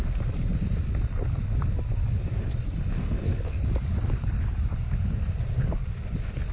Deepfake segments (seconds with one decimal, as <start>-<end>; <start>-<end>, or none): 3.0-3.6